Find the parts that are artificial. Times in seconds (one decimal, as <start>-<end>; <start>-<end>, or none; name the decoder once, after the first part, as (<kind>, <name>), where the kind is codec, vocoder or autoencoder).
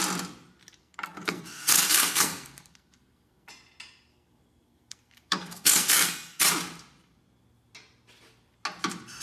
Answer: 0.8-3.5 (codec, SNAC); 4.1-6.4